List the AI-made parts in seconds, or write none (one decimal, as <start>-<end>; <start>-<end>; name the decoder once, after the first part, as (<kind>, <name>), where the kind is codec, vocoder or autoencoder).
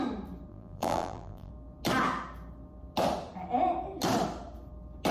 0.5-1.5 (vocoder, BigVGAN v2)